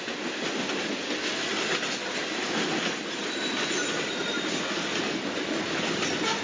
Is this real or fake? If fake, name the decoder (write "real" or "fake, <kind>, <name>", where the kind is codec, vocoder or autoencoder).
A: real